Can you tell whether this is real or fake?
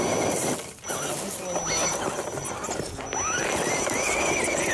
real